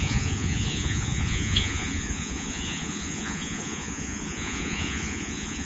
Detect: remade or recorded remade